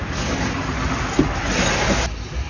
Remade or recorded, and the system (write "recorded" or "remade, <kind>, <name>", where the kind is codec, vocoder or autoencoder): recorded